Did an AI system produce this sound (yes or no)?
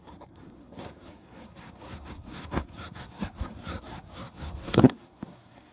yes